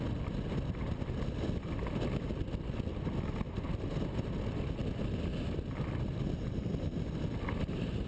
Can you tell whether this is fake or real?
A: real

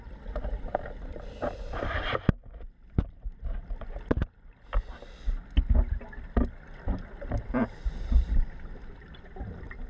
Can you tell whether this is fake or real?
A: real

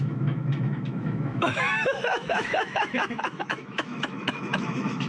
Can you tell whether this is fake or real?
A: fake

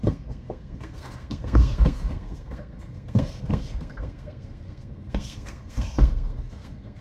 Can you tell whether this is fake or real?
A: fake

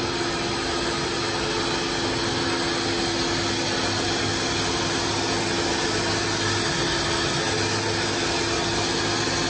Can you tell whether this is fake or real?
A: real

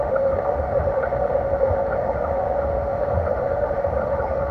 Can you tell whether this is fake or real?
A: fake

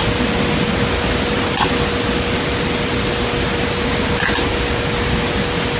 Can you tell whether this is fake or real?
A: real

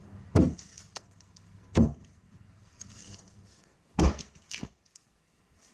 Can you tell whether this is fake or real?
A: fake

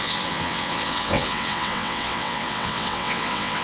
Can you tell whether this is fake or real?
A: fake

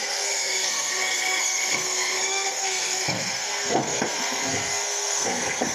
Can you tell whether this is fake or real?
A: fake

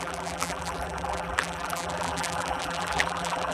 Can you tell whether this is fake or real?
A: fake